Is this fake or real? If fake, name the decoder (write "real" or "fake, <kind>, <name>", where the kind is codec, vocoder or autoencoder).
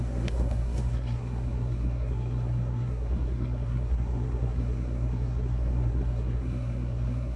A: fake, codec, SNAC